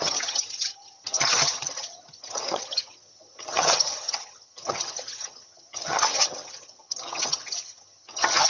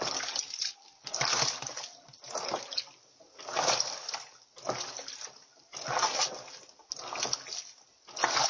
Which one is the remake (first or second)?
first